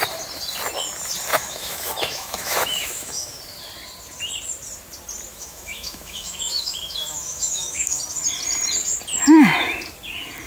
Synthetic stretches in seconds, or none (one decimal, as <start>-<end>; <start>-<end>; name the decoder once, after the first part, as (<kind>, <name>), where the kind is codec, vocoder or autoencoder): 1.3-3.4 (autoencoder, DAC-VAE); 5.3-8.0